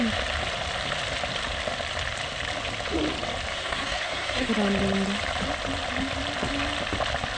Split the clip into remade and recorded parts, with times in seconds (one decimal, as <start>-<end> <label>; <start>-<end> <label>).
0.0-3.5 recorded; 3.5-4.5 remade; 4.5-7.4 recorded